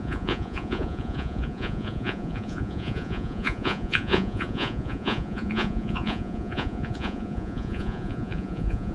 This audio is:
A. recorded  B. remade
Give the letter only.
B